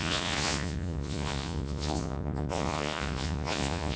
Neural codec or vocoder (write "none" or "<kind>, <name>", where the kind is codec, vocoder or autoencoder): vocoder, Vocos